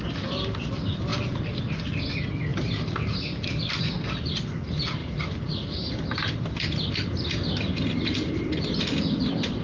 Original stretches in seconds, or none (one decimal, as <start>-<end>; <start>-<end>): 0.0-9.6